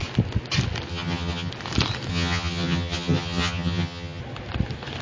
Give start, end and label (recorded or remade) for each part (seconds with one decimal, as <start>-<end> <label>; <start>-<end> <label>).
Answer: 0.0-0.9 recorded; 0.9-1.5 remade; 1.5-2.1 recorded; 2.1-4.2 remade; 4.2-5.0 recorded